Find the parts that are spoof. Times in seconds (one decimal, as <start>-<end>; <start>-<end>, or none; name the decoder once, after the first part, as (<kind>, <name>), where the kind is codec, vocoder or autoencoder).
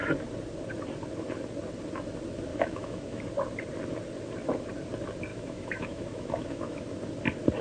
2.5-3.2 (autoencoder, DAC-VAE); 5.3-6.8